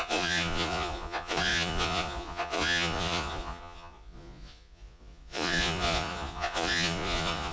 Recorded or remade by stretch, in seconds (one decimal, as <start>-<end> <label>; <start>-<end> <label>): 0.0-7.5 remade